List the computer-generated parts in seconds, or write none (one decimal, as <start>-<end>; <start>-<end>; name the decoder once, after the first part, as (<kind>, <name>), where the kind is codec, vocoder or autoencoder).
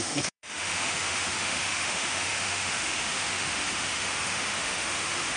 0.0-5.4 (autoencoder, DAC-VAE)